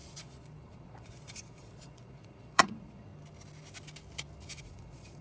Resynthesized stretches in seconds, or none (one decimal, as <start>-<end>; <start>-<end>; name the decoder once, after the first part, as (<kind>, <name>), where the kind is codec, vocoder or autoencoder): 0.0-3.1 (vocoder, Vocos); 4.6-5.2